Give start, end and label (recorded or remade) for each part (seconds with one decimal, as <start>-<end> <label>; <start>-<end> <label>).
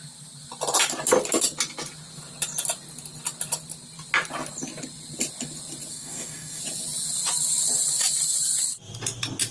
0.0-5.9 recorded; 5.9-6.6 remade; 6.6-9.5 recorded